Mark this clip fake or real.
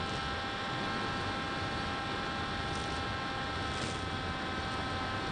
real